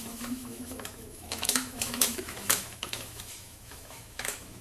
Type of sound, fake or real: fake